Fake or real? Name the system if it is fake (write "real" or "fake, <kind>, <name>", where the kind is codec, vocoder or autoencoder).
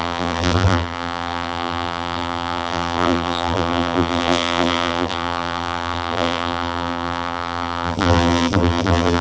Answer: fake, vocoder, BigVGAN v2